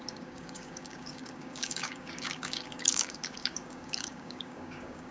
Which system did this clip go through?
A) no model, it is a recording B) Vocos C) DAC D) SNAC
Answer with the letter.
C